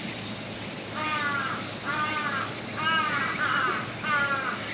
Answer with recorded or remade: recorded